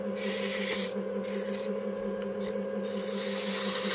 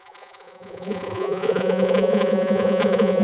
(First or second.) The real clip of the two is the first